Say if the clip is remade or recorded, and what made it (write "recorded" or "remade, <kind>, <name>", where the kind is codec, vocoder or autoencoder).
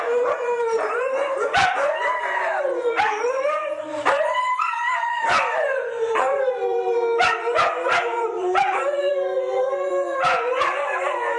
remade, vocoder, Vocos